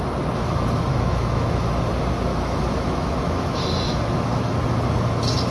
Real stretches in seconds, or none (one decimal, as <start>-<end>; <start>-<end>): 0.0-0.9; 1.8-2.3; 4.5-5.5